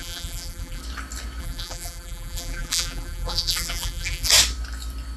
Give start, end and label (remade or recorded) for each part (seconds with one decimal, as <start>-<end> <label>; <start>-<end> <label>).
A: 0.0-0.8 remade; 0.8-1.4 recorded; 1.4-4.3 remade; 4.3-5.2 recorded